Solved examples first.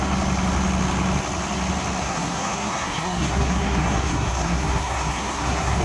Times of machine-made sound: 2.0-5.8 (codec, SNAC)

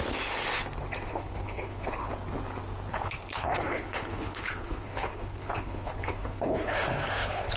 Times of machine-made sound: 1.1-2.1 (codec, HILCodec); 2.9-7.6

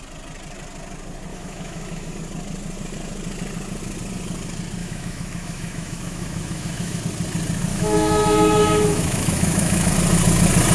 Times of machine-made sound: 1.3-2.1 (autoencoder, DAC-VAE); 4.8-7.0; 7.7-9.9

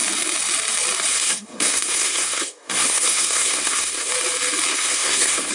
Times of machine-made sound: 1.1-4.1 (codec, SNAC); 4.7-5.5